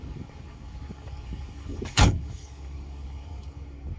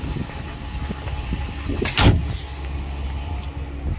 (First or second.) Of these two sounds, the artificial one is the first